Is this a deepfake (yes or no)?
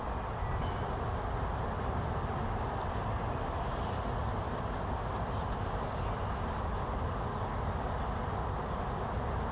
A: no